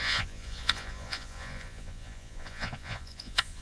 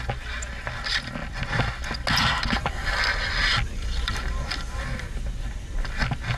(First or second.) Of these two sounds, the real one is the second